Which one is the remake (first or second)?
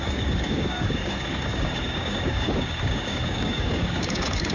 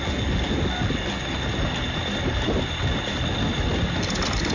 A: first